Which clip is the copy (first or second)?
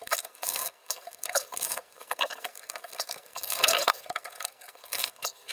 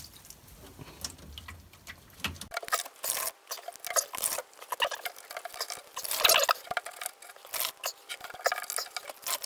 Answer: first